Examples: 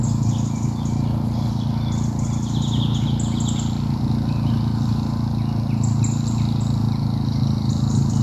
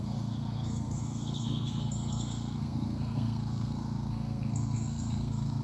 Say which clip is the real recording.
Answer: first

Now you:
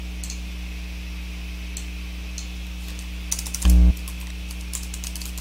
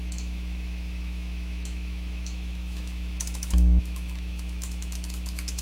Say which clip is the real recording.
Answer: first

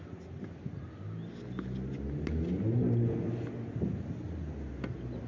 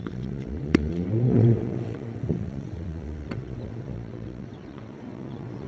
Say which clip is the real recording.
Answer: first